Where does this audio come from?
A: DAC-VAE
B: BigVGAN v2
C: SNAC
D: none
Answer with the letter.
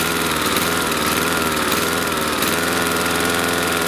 B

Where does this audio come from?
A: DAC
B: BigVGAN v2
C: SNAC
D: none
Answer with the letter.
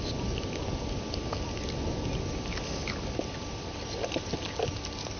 D